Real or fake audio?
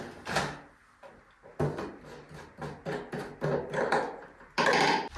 real